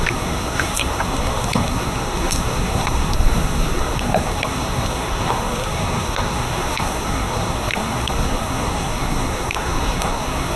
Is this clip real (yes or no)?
no